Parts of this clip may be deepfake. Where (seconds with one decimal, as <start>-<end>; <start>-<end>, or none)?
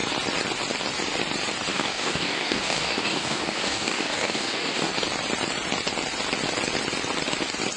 1.7-4.9